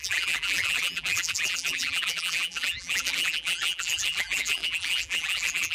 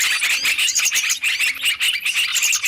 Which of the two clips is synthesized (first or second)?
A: first